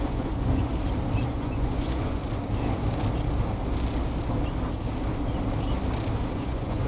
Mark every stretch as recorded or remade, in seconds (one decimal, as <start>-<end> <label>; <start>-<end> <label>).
0.0-0.7 remade; 0.7-1.3 recorded; 1.3-2.2 remade; 2.2-6.3 recorded; 6.3-6.9 remade